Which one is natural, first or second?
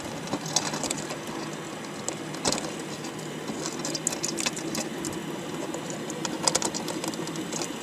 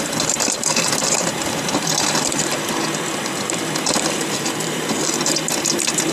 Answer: first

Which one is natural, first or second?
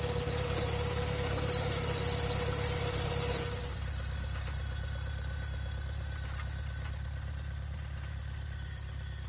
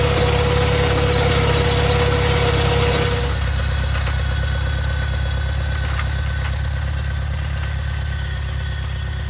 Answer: second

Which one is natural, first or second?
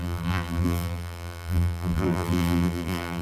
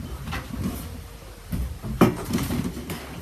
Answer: second